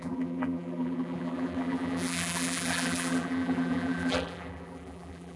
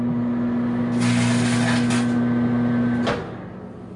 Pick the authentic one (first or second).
second